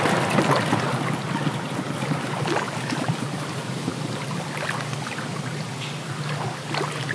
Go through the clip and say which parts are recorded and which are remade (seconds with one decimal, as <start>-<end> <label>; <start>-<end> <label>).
0.0-7.1 recorded